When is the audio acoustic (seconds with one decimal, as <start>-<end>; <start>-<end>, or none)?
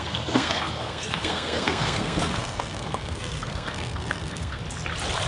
4.6-5.3